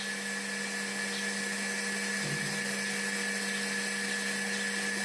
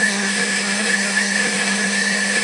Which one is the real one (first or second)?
first